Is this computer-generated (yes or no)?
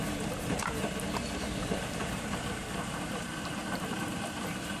yes